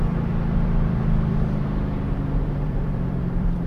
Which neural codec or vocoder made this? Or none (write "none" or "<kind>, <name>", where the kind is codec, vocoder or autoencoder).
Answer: vocoder, BigVGAN v2